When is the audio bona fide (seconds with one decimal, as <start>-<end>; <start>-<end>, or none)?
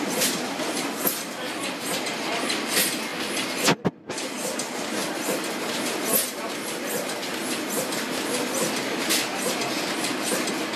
0.0-10.8